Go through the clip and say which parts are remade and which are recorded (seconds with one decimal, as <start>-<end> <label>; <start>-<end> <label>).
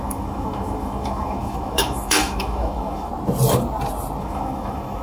0.0-3.1 remade; 3.1-4.2 recorded; 4.2-5.0 remade